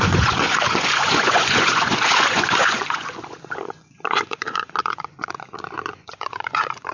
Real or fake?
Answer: fake